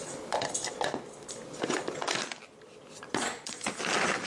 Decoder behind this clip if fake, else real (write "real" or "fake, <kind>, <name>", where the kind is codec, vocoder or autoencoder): real